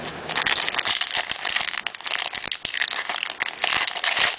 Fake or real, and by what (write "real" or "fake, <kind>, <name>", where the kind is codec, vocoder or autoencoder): real